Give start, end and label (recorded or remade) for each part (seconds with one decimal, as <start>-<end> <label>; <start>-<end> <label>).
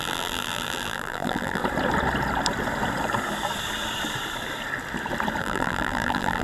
0.0-1.6 remade; 1.6-5.4 recorded; 5.4-6.4 remade